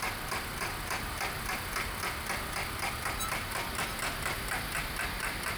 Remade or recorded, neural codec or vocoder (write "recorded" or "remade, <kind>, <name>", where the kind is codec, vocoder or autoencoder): recorded